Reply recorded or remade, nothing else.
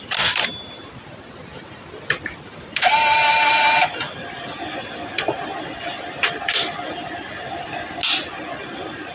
recorded